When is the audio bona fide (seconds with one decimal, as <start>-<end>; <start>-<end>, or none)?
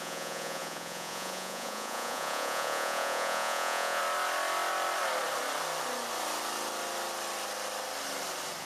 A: 4.0-8.6